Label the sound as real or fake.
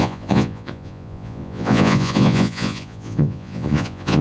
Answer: fake